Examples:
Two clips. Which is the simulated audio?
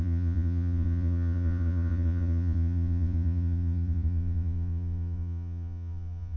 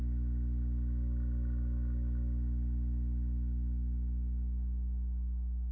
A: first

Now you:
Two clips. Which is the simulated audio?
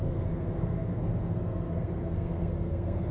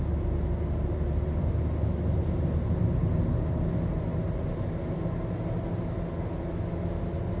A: first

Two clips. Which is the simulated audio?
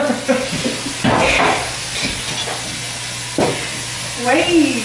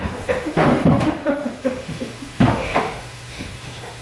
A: second